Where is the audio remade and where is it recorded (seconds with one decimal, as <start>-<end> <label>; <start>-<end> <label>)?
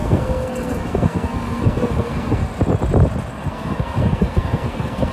0.0-2.4 remade; 2.4-3.3 recorded; 3.3-5.1 remade